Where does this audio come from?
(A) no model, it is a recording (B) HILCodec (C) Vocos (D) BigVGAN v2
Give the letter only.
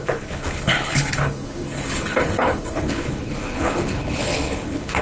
B